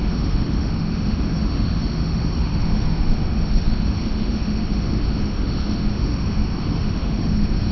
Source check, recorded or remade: remade